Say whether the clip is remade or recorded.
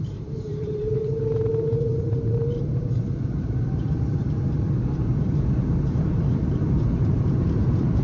remade